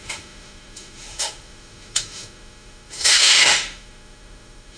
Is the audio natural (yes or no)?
no